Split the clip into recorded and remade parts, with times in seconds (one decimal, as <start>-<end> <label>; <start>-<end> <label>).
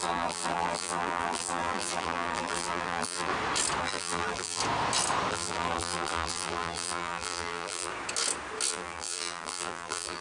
0.0-3.3 remade; 3.3-3.8 recorded; 3.8-4.6 remade; 4.6-5.3 recorded; 5.3-7.9 remade; 7.9-8.7 recorded; 8.7-10.2 remade